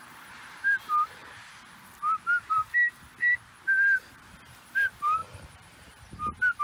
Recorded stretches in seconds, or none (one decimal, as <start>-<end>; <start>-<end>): 1.2-4.1